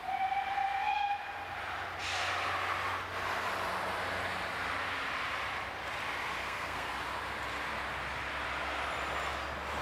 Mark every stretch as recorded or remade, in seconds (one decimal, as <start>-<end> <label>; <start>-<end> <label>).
0.0-6.4 recorded; 6.4-6.9 remade; 6.9-9.8 recorded